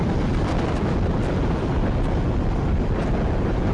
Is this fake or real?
real